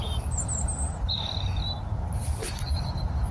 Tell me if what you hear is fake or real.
real